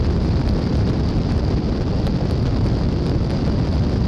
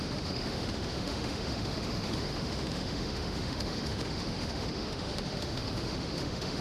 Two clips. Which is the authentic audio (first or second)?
first